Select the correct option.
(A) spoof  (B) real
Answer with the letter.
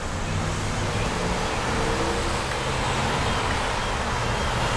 B